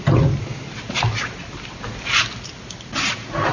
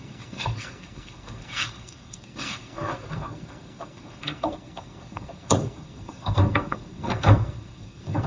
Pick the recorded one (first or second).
first